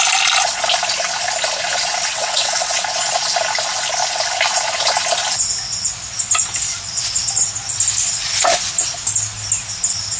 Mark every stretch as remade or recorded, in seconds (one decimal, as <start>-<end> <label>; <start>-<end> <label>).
0.0-2.1 recorded; 2.1-2.8 remade; 2.8-10.2 recorded